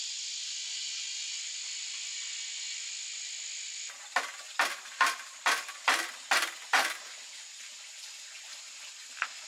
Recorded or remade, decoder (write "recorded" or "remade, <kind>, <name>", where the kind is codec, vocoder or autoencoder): recorded